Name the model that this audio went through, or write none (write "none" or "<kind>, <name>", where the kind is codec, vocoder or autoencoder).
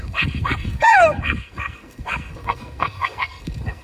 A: codec, SNAC